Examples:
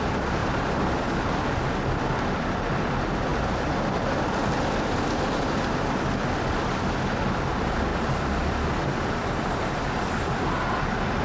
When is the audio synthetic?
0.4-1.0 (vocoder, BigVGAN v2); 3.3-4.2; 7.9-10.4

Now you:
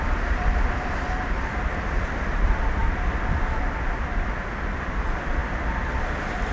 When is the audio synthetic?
0.0-5.4 (vocoder, BigVGAN v2); 6.0-6.5

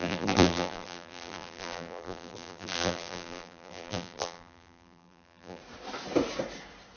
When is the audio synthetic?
0.0-5.6 (vocoder, BigVGAN v2)